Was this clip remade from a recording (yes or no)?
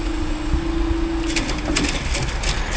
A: no